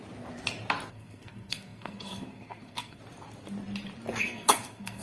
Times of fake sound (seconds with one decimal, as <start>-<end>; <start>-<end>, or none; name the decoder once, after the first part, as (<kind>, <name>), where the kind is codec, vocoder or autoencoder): 0.9-3.0 (codec, SNAC); 4.2-5.0